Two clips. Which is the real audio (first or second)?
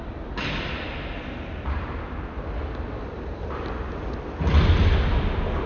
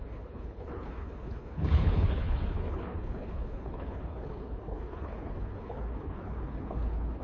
first